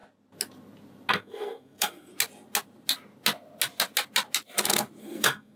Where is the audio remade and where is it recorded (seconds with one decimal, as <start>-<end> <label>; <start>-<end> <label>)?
0.0-1.1 recorded; 1.1-2.1 remade; 2.1-5.0 recorded; 5.0-5.6 remade

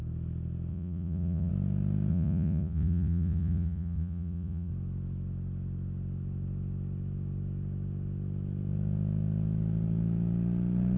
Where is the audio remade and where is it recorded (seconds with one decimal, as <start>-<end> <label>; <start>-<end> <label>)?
0.0-0.7 recorded; 0.7-1.5 remade; 1.5-2.1 recorded; 2.1-4.7 remade; 4.7-11.0 recorded

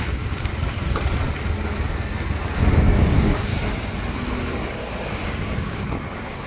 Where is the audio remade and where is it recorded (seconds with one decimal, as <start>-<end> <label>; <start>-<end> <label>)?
0.0-0.5 remade; 0.5-2.6 recorded; 2.6-3.5 remade; 3.5-5.1 recorded; 5.1-6.5 remade